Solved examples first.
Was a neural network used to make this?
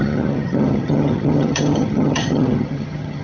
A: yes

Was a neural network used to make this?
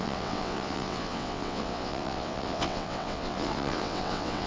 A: yes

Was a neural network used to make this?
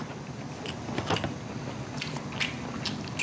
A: no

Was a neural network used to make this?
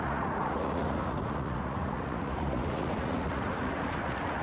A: yes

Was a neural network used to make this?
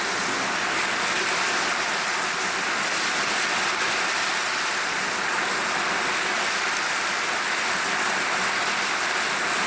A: no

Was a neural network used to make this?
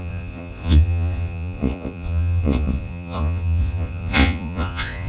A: yes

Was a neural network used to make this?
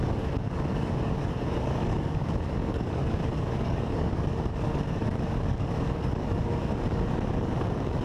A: yes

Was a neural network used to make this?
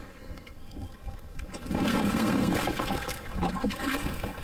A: yes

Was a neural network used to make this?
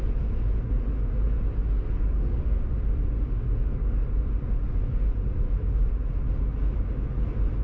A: no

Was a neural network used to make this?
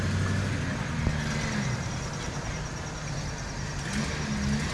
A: no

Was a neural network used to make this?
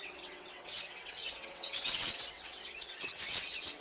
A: yes